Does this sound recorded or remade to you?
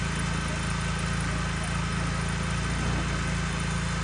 recorded